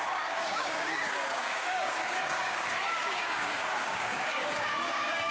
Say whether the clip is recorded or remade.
remade